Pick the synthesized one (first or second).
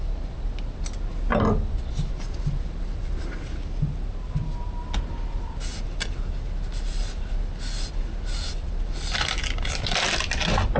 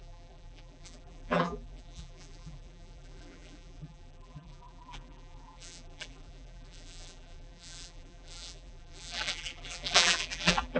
second